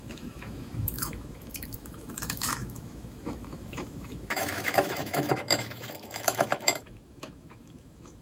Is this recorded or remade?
remade